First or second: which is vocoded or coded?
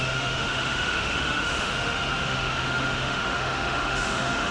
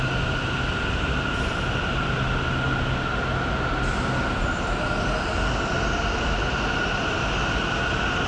first